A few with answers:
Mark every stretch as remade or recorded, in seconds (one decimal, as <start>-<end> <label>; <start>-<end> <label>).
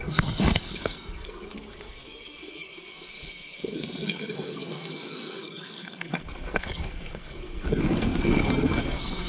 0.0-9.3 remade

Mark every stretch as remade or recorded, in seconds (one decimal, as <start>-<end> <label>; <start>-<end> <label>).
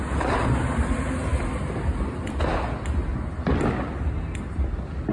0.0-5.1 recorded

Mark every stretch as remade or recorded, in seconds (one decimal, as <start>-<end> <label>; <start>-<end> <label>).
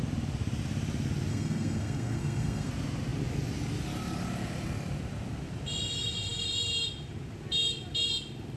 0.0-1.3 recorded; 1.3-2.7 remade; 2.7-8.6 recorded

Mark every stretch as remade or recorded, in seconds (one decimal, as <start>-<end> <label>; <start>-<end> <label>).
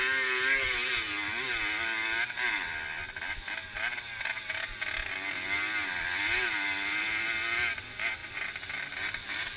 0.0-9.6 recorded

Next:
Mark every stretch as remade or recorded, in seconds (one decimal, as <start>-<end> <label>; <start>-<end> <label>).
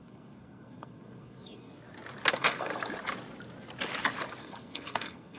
0.0-1.7 remade; 1.7-2.3 recorded; 2.3-2.7 remade; 2.7-4.4 recorded; 4.4-5.4 remade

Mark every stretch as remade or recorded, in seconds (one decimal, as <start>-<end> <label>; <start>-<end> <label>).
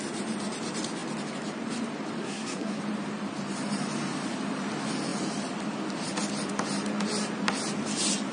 0.0-2.2 recorded; 2.2-2.8 remade; 2.8-8.3 recorded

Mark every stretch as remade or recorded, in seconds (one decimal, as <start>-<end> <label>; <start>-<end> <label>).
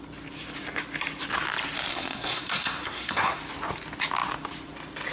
0.0-1.9 recorded; 1.9-3.4 remade; 3.4-5.1 recorded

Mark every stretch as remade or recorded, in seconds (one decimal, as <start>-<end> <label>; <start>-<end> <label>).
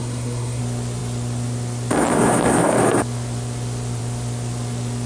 0.0-0.6 remade; 0.6-5.1 recorded